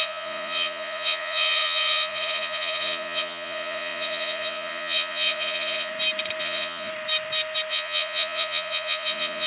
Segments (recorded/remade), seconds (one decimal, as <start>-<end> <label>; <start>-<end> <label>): 0.0-5.9 remade; 5.9-6.4 recorded; 6.4-6.9 remade; 6.9-7.7 recorded; 7.7-9.5 remade